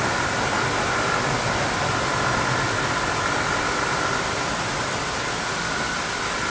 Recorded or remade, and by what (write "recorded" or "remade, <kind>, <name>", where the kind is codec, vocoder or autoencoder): recorded